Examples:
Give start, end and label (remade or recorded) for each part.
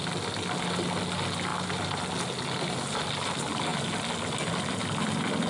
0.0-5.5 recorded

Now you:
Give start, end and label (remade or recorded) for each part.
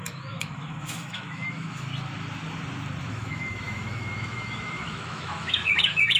0.0-1.9 remade; 1.9-3.1 recorded; 3.1-6.2 remade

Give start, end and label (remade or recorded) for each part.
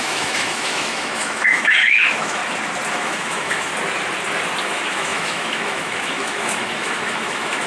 0.0-2.4 remade; 2.4-2.9 recorded; 2.9-3.7 remade; 3.7-4.6 recorded; 4.6-7.7 remade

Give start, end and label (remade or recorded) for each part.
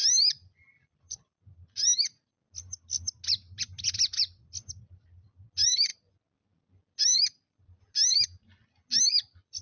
0.0-9.6 recorded